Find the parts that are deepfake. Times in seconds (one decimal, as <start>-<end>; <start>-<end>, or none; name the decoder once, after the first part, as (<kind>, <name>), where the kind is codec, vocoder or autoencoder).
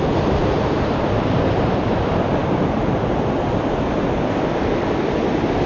none